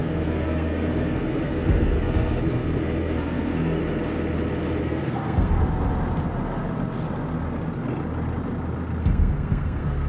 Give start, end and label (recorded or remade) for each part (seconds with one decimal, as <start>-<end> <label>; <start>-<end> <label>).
0.0-3.8 remade; 3.8-4.8 recorded; 4.8-5.6 remade; 5.6-9.0 recorded; 9.0-10.1 remade